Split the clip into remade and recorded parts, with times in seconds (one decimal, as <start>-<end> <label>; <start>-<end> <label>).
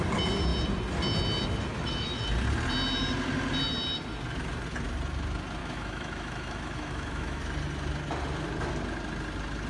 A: 0.0-1.7 recorded; 1.7-2.2 remade; 2.2-5.6 recorded; 5.6-7.4 remade; 7.4-9.7 recorded